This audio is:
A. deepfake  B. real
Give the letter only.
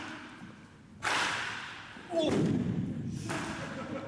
B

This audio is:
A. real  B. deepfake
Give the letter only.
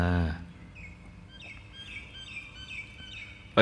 A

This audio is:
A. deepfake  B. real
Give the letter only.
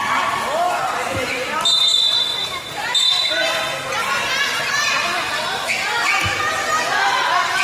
B